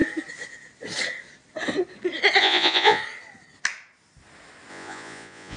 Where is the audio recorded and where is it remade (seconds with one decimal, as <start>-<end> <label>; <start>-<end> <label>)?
0.0-2.4 recorded; 2.4-3.0 remade; 3.0-4.7 recorded; 4.7-5.6 remade